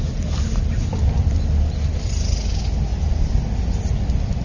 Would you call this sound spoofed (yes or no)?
no